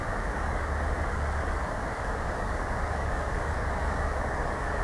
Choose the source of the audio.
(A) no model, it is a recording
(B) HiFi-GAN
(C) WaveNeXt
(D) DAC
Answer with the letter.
D